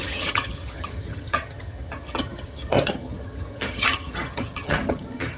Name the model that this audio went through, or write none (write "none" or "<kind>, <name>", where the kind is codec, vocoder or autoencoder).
vocoder, HiFi-GAN